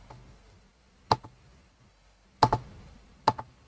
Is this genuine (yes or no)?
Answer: yes